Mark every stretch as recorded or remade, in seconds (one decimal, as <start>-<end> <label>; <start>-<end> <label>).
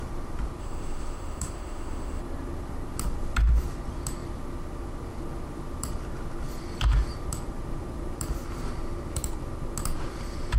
0.0-0.6 recorded; 0.6-2.2 remade; 2.2-10.6 recorded